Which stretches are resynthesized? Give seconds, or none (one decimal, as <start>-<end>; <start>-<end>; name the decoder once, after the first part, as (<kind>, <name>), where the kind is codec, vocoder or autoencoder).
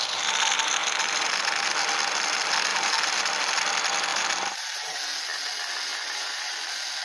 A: 2.7-3.5 (vocoder, BigVGAN v2); 4.1-5.0; 5.9-6.6